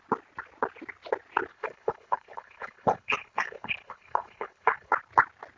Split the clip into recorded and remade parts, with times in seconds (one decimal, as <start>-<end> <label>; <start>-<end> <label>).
0.0-1.5 recorded; 1.5-4.9 remade; 4.9-5.6 recorded